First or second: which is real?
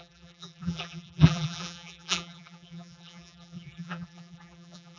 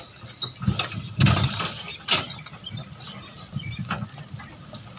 second